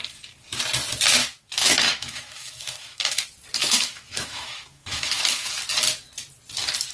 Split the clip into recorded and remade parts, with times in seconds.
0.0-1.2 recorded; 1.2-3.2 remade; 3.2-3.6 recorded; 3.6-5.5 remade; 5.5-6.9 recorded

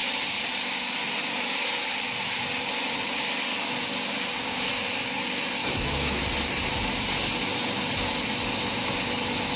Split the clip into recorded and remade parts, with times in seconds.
0.0-5.6 recorded; 5.6-6.2 remade; 6.2-9.6 recorded